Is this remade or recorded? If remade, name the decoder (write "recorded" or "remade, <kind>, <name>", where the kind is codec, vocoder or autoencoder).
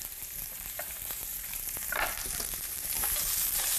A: remade, vocoder, BigVGAN v2